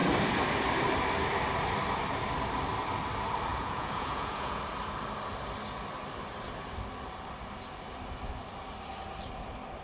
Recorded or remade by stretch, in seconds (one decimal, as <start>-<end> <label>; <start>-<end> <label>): 0.0-3.5 recorded; 3.5-4.6 remade; 4.6-9.8 recorded